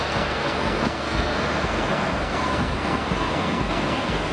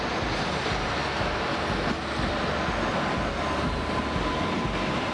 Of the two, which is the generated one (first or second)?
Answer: first